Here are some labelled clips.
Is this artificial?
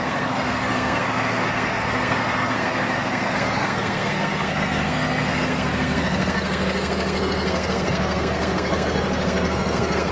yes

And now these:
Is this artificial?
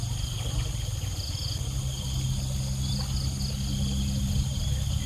no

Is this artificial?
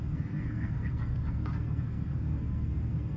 yes